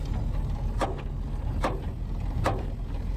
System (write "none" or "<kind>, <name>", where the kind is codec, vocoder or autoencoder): none